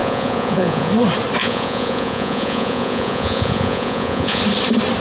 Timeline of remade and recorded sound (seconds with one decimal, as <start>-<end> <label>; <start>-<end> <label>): 0.0-0.9 remade; 0.9-1.4 recorded; 1.4-4.4 remade; 4.4-5.0 recorded

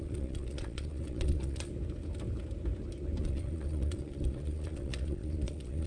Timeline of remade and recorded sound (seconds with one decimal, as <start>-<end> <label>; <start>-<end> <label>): 0.0-1.7 remade; 1.7-3.2 recorded; 3.2-5.9 remade

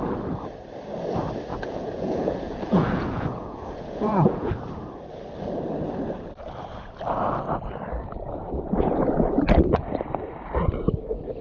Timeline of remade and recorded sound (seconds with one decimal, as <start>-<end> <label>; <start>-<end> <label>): 0.0-1.5 recorded; 1.5-4.5 remade; 4.5-11.4 recorded

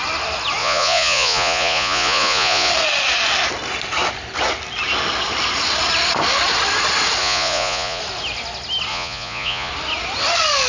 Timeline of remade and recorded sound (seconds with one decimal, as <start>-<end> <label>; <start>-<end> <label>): 0.0-0.6 recorded; 0.6-2.7 remade; 2.7-7.2 recorded; 7.2-8.0 remade; 8.0-8.9 recorded; 8.9-9.7 remade; 9.7-10.7 recorded

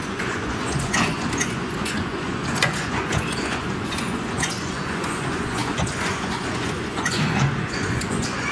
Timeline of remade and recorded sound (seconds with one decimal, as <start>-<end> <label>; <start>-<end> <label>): 0.0-8.5 remade

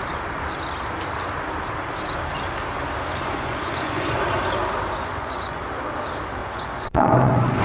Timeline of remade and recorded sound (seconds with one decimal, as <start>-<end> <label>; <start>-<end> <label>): 0.0-3.1 recorded; 3.1-4.5 remade; 4.5-5.0 recorded; 5.0-5.6 remade; 5.6-6.4 recorded; 6.4-7.6 remade

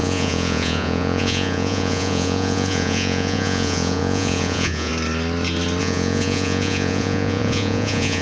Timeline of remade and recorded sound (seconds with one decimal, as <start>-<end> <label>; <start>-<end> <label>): 0.0-4.9 remade; 4.9-5.8 recorded; 5.8-8.2 remade

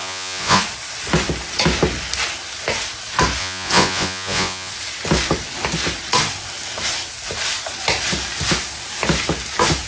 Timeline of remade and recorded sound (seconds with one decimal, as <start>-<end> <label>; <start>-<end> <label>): 0.0-0.6 remade; 0.6-3.4 recorded; 3.4-4.7 remade; 4.7-9.9 recorded